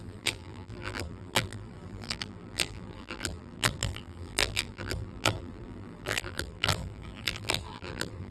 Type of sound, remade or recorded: remade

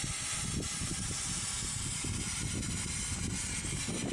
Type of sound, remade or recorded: recorded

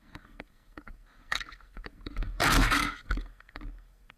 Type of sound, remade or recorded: remade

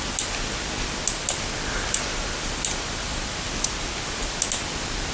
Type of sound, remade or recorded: recorded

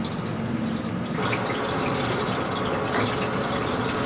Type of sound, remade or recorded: recorded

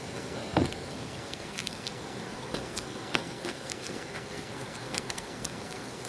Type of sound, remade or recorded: remade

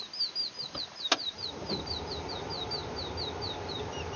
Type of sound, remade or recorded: recorded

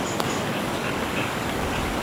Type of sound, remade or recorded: remade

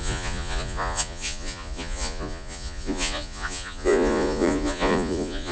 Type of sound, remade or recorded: remade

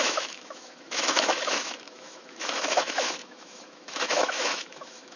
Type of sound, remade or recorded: remade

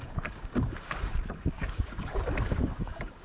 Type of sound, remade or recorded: remade